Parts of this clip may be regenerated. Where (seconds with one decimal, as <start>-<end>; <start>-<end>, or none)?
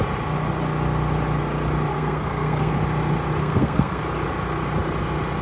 1.9-2.7; 3.4-4.0